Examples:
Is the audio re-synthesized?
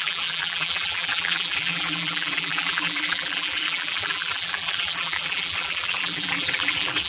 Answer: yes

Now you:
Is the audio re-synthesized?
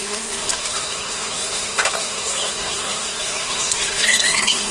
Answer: yes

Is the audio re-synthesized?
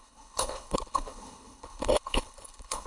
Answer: yes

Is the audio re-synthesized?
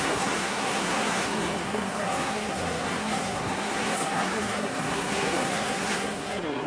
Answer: yes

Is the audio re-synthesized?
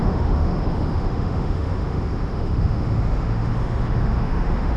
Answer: yes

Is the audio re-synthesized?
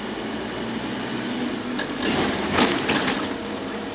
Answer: no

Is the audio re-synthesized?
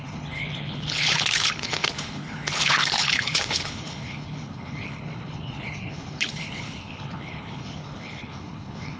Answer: yes